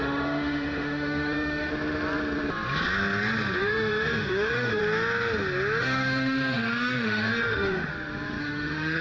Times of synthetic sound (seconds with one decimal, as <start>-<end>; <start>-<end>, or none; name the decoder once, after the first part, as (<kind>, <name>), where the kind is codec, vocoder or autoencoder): 0.0-1.7 (autoencoder, DAC-VAE); 3.6-4.8; 5.8-7.9; 8.4-9.0